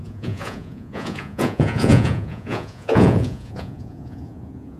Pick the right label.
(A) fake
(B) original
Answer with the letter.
A